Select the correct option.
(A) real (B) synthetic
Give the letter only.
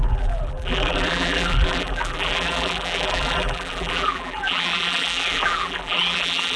B